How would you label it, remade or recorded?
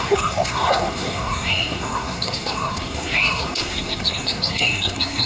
remade